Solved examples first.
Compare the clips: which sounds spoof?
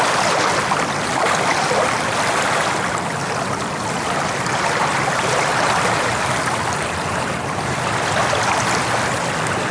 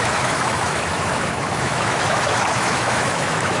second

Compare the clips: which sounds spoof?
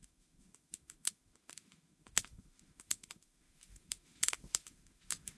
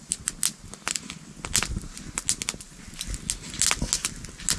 first